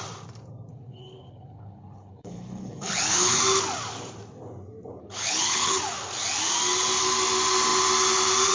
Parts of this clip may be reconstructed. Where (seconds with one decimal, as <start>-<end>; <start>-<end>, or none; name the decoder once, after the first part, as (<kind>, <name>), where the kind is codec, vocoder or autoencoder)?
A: 0.7-3.4 (codec, HILCodec); 5.0-5.8